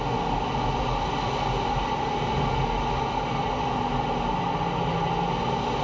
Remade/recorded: recorded